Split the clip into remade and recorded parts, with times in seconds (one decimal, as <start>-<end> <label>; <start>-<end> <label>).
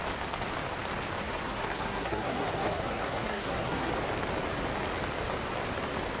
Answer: 0.0-1.2 recorded; 1.2-3.9 remade; 3.9-6.2 recorded